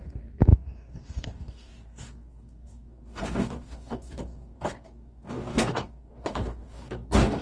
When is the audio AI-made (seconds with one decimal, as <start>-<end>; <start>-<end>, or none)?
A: 0.0-7.4